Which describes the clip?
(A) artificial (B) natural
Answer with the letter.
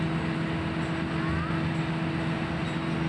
B